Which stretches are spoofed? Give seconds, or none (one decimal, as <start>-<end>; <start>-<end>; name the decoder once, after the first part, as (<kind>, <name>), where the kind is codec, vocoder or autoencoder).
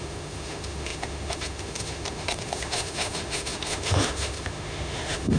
0.0-5.4 (autoencoder, DAC-VAE)